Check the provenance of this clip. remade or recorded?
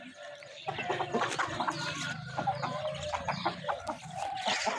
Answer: recorded